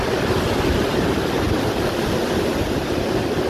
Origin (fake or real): fake